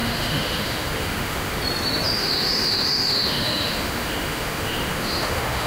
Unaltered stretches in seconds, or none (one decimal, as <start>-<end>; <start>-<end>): 1.6-2.2